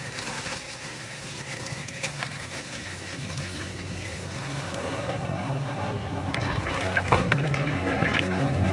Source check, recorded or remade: remade